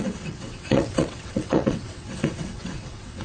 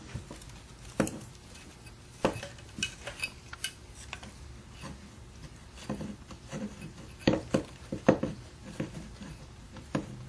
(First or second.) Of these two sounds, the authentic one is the second